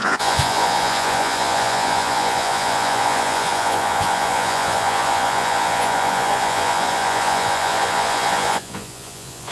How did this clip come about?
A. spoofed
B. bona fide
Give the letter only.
A